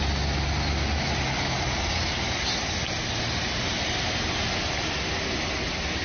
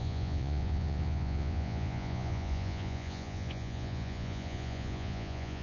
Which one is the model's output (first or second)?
second